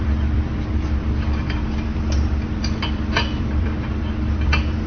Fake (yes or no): yes